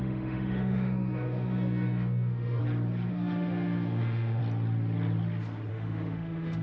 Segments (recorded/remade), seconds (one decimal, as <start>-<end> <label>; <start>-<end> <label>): 0.0-2.6 remade; 2.6-3.1 recorded; 3.1-4.4 remade; 4.4-5.7 recorded; 5.7-6.6 remade

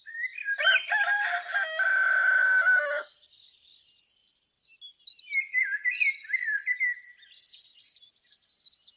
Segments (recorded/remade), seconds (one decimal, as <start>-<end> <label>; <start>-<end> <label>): 0.0-1.5 recorded; 1.5-3.0 remade; 3.0-9.0 recorded

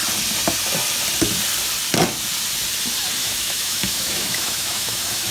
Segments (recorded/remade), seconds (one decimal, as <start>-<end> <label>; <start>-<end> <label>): 0.0-3.2 recorded; 3.2-5.3 remade

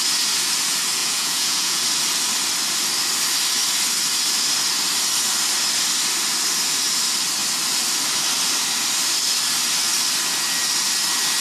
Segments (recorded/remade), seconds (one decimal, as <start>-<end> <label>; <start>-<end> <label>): 0.0-1.0 recorded; 1.0-1.8 remade; 1.8-11.4 recorded

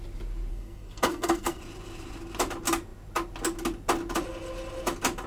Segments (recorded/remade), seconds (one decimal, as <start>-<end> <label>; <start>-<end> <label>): 0.0-0.5 recorded; 0.5-1.6 remade; 1.6-5.3 recorded

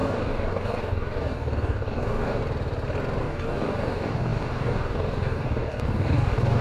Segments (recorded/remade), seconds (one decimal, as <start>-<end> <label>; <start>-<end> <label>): 0.0-2.4 remade; 2.4-3.2 recorded; 3.2-6.6 remade